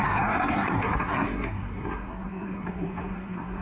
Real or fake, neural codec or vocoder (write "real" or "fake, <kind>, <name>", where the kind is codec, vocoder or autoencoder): fake, codec, SNAC